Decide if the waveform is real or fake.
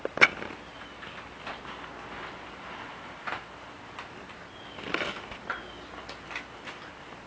real